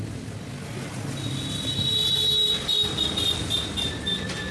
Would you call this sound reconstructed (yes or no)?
no